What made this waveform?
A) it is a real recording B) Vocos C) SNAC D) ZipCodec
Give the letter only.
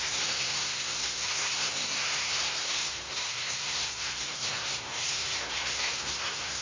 C